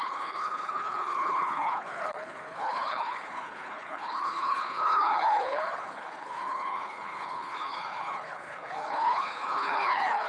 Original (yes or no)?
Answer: no